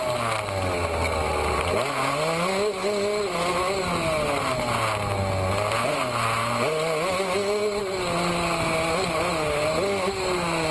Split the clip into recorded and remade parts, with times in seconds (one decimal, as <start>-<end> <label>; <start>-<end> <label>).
0.0-10.7 recorded